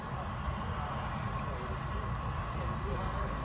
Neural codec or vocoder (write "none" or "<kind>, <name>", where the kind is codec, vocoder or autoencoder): none